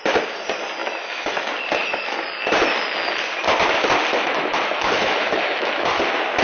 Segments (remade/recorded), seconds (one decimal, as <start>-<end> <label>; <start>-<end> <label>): 0.0-0.8 recorded; 0.8-1.5 remade; 1.5-4.1 recorded; 4.1-6.0 remade; 6.0-6.4 recorded